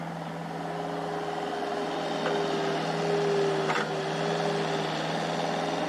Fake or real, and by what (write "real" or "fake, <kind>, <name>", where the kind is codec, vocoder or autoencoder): real